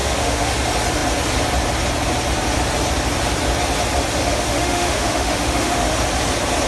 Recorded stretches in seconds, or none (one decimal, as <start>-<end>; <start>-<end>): 0.5-4.2; 6.0-6.7